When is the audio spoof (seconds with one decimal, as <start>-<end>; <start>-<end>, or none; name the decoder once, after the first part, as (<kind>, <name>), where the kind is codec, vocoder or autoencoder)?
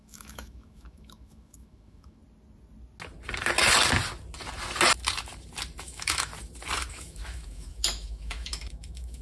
0.0-2.2 (autoencoder, DAC-VAE); 5.8-6.3; 6.9-9.2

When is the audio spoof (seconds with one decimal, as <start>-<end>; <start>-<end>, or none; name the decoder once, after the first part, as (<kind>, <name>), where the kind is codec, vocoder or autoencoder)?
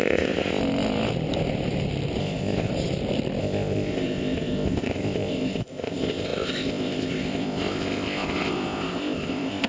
0.0-0.6 (codec, ZipCodec); 2.2-2.7; 3.4-9.7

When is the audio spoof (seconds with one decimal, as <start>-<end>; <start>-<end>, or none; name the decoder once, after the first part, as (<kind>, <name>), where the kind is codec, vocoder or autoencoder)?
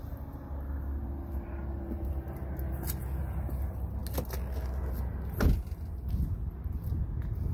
none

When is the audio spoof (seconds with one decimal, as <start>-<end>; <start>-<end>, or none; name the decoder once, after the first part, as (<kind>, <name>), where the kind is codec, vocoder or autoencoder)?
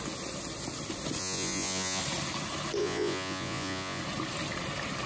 1.2-2.0 (vocoder, Vocos); 2.8-4.0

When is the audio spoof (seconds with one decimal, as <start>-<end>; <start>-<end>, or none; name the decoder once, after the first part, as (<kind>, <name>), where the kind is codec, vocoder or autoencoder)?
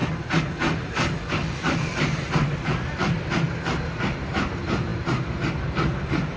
0.6-6.4 (vocoder, BigVGAN v2)